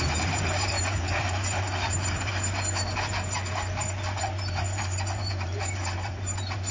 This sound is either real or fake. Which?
fake